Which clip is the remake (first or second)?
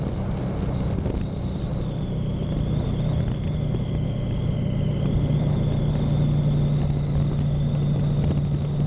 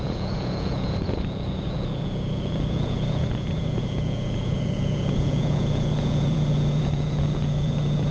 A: second